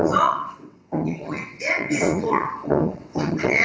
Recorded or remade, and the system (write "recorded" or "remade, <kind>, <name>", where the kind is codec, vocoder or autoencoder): remade, vocoder, WaveNeXt